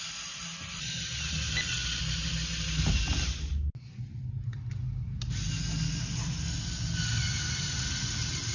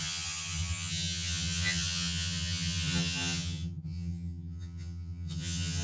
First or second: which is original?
first